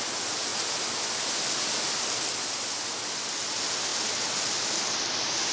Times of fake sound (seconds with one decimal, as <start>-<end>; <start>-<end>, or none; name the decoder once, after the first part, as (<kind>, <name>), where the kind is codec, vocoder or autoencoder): none